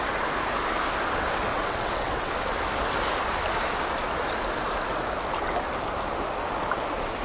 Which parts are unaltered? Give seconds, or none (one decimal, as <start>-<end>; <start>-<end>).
0.0-1.5; 2.3-7.2